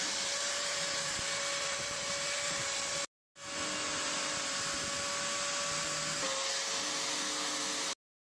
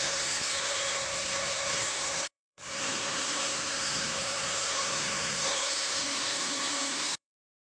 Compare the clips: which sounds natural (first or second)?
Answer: first